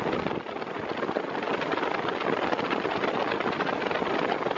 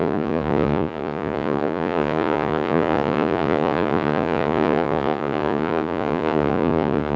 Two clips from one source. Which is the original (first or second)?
first